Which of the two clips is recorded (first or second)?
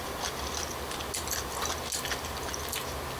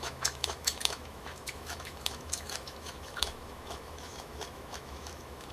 first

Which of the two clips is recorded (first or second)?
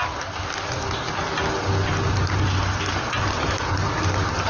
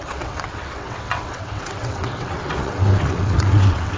first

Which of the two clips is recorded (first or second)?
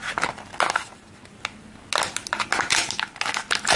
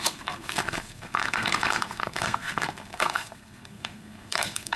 first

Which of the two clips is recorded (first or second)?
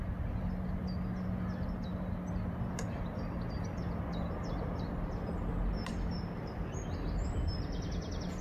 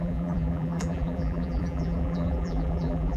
first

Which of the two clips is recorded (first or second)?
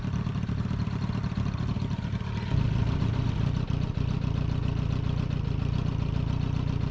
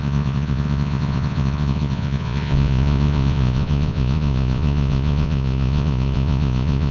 first